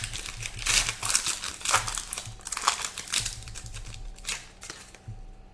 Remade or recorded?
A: recorded